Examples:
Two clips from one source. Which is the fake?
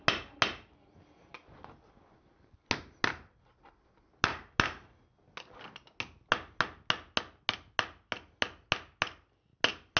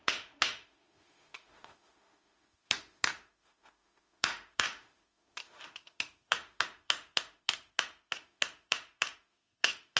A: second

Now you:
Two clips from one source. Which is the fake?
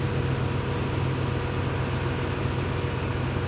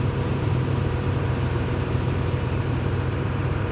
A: second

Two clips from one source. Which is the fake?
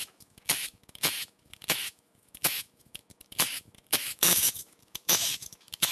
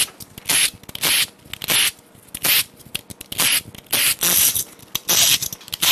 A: first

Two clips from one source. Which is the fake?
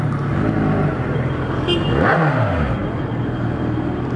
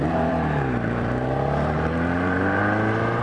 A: second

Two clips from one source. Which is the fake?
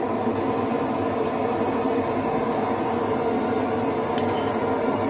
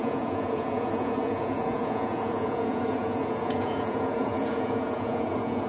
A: second